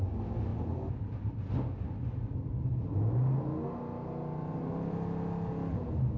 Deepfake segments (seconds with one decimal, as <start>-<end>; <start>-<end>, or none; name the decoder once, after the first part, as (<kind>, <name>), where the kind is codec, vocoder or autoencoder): none